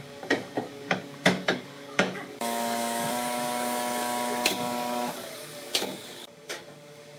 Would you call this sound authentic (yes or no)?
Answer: no